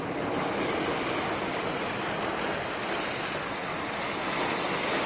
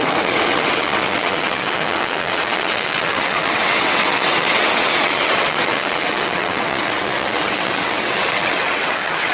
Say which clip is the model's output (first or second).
second